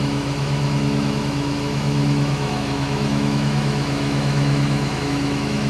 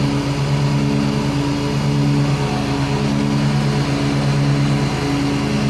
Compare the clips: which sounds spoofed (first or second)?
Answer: first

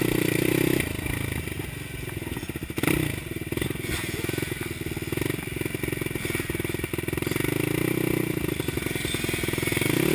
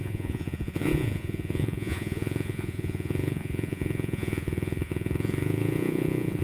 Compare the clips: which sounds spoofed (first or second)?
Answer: second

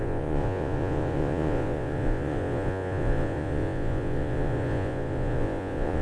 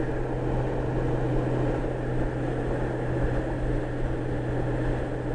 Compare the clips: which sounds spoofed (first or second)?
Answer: first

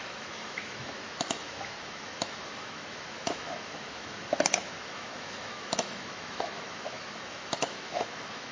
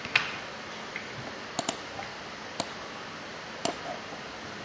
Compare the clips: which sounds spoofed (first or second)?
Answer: first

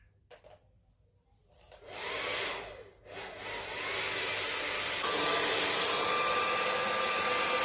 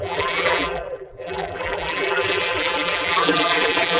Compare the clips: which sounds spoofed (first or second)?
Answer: second